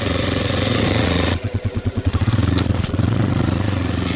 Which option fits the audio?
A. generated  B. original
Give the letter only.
A